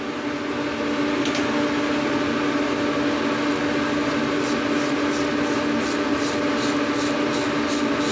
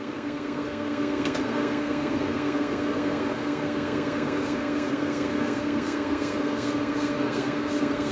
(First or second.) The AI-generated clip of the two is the second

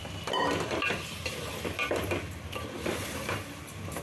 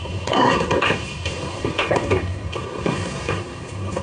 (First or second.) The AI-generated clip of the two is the second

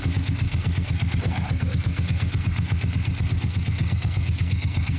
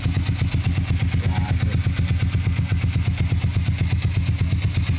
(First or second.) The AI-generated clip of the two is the first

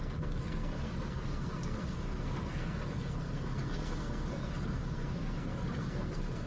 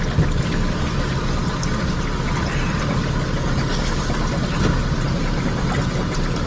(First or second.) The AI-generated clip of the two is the first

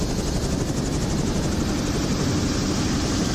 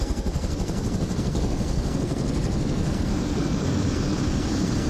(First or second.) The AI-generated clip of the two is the second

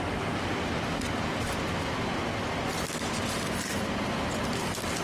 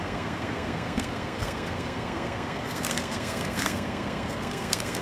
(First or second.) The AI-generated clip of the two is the second